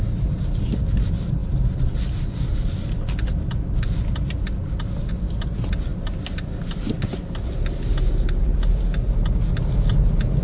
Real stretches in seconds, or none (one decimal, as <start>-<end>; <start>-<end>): 0.0-8.5; 9.1-10.4